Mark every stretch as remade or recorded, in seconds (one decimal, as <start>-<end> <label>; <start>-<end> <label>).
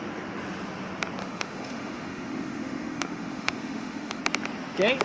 0.0-1.2 recorded; 1.2-4.2 remade; 4.2-5.0 recorded